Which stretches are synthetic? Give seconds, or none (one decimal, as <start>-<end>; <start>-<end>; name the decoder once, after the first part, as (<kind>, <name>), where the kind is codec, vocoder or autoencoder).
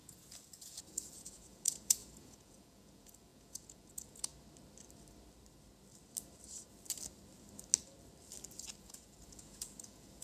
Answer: 0.0-4.3 (vocoder, Vocos); 8.8-10.2